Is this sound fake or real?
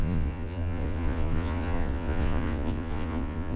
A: fake